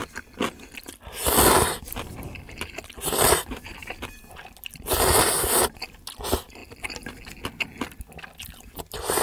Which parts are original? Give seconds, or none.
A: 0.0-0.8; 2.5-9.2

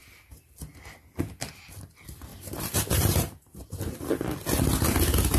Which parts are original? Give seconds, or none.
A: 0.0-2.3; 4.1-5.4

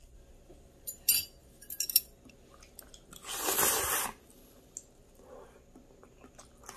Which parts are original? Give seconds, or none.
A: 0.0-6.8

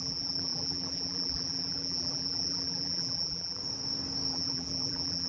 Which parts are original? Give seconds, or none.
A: 3.6-4.3